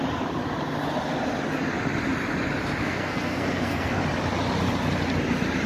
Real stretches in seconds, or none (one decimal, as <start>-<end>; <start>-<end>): 0.0-2.8; 4.0-5.7